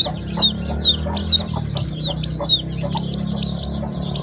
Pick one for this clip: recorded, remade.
recorded